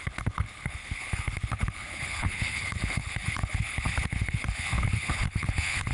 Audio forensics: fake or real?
fake